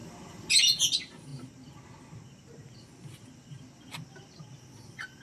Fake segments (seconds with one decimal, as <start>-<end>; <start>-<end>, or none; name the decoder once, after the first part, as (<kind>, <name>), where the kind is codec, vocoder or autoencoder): none